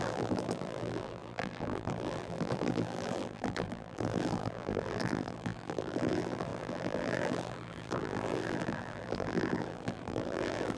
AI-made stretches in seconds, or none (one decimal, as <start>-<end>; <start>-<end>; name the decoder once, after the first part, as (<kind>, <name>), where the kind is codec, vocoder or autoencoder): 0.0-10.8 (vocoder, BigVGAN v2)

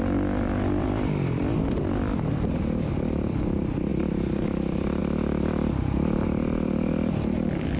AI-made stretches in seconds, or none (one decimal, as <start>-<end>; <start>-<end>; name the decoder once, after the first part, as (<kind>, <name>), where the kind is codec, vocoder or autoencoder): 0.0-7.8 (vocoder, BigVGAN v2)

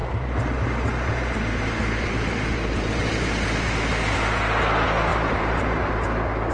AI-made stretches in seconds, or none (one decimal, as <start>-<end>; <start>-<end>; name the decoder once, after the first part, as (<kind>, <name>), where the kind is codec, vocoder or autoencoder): 0.0-3.3 (vocoder, BigVGAN v2); 5.1-5.9

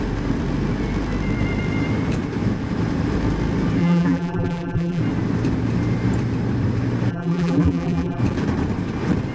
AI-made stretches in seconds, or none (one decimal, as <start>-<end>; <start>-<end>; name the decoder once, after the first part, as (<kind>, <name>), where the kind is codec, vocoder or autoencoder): 3.8-5.0 (vocoder, BigVGAN v2); 7.1-8.2